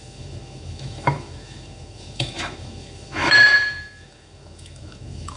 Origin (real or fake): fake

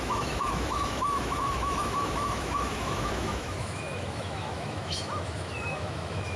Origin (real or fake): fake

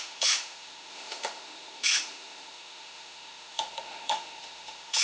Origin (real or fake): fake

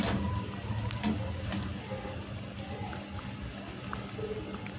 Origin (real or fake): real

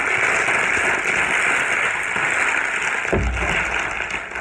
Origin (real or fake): real